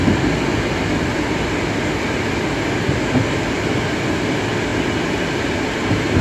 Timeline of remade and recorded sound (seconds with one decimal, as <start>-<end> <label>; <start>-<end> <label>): 0.0-6.2 recorded